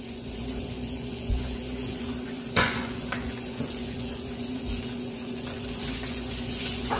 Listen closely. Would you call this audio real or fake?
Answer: fake